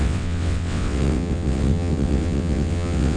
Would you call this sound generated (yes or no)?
yes